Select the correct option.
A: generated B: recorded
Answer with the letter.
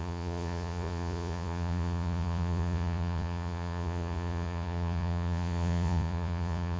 A